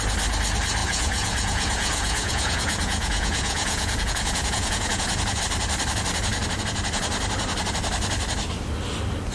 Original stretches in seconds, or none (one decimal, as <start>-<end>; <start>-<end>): 0.0-0.8; 5.4-9.3